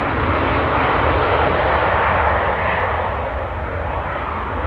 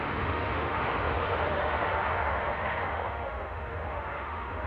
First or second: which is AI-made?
second